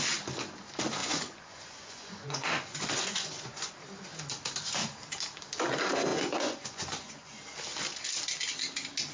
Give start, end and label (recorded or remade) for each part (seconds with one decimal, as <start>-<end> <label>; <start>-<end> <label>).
0.0-1.0 recorded; 1.0-3.7 remade; 3.7-6.1 recorded; 6.1-7.4 remade; 7.4-9.1 recorded